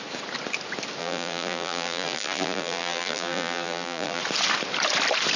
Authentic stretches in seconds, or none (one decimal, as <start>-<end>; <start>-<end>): 0.0-1.0; 4.2-5.4